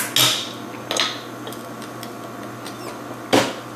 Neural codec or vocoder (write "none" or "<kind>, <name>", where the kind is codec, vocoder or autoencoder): none